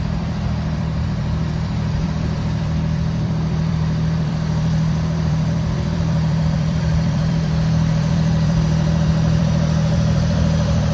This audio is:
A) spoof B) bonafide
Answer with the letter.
A